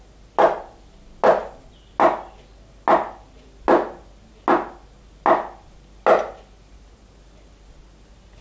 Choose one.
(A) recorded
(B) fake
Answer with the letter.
A